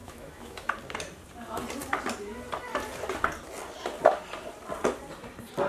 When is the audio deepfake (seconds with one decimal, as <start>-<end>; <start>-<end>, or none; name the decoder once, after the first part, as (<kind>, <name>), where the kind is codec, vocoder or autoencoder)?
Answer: 0.0-0.7 (autoencoder, DAC-VAE)